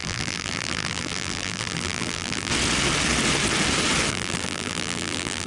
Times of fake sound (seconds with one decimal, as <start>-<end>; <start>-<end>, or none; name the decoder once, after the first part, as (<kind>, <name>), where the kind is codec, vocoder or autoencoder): 0.0-2.5 (vocoder, BigVGAN v2); 4.1-5.5